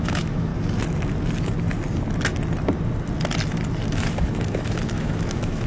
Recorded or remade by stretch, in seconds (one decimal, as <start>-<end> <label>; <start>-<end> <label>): 0.0-0.5 remade; 0.5-3.9 recorded; 3.9-5.7 remade